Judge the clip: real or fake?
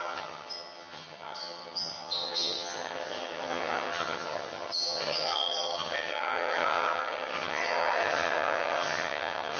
fake